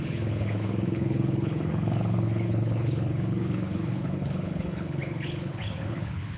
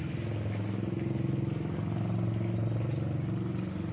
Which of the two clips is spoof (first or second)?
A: first